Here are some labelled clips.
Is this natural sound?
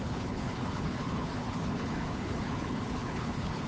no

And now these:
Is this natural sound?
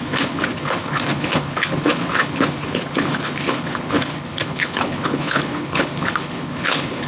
no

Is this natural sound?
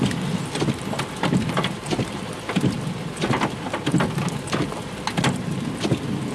yes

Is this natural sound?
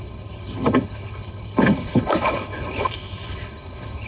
no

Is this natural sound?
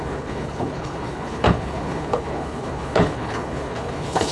no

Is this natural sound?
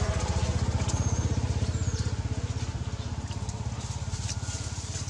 yes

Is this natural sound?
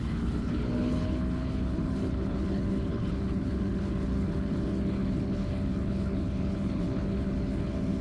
no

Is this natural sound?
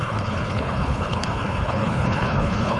no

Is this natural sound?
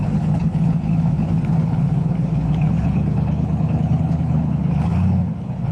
no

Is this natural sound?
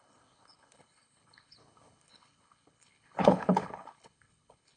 no